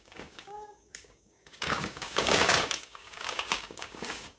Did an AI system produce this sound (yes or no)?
yes